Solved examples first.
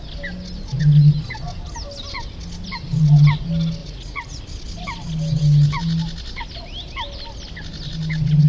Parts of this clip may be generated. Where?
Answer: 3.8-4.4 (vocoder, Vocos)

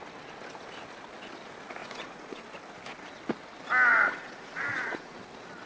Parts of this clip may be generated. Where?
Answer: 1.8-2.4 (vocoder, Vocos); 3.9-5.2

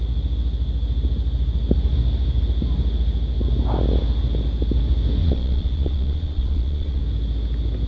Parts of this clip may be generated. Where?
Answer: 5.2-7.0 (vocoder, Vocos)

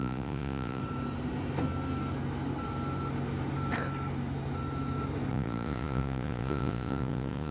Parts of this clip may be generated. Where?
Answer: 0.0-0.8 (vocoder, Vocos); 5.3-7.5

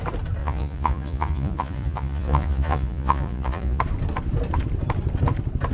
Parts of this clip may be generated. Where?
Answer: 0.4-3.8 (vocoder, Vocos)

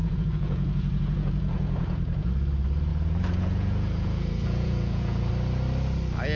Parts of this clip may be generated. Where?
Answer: 0.0-2.3 (vocoder, Vocos); 2.9-5.3

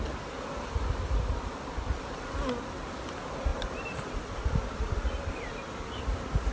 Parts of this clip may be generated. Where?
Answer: none